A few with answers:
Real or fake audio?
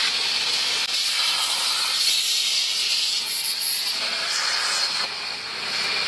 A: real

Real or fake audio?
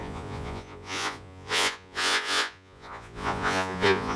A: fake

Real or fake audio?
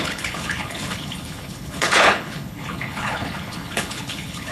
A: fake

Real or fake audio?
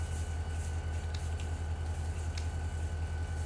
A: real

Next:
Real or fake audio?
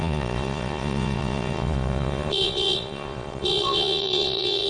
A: fake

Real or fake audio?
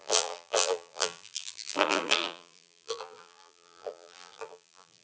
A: fake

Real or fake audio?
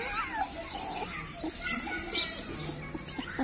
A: real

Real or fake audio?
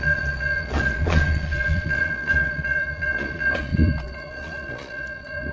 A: fake